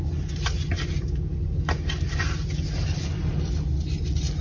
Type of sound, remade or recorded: recorded